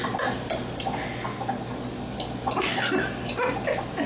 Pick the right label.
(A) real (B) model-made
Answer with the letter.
A